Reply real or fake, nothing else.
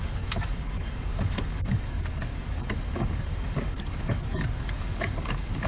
fake